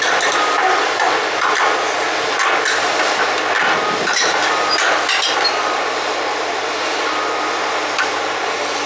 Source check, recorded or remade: recorded